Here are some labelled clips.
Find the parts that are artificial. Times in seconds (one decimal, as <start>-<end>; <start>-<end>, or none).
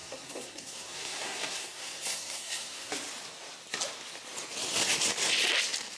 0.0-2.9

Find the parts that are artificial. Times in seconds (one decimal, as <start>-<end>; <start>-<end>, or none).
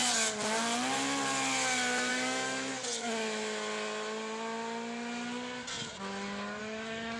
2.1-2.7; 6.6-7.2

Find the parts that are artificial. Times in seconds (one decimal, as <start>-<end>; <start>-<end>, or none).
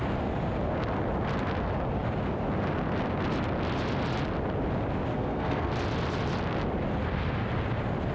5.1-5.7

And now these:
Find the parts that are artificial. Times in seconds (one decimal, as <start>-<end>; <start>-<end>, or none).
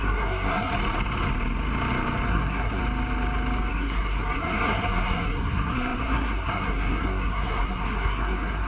0.0-0.7; 2.3-2.8; 3.7-8.7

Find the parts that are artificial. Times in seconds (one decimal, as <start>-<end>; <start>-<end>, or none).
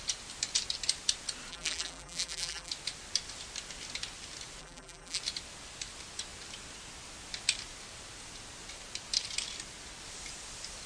1.5-2.7; 4.6-5.2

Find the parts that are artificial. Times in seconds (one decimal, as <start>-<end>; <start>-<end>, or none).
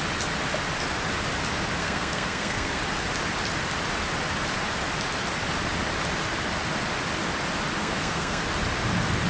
1.8-2.8; 7.8-8.4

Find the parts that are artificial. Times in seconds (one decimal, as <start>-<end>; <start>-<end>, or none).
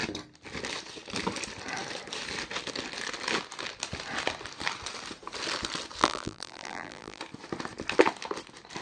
6.0-7.2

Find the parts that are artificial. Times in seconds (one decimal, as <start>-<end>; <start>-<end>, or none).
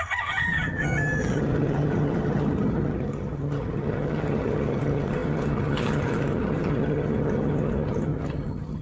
0.0-8.8